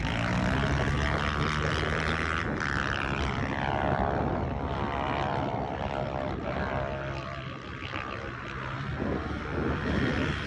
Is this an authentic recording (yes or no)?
yes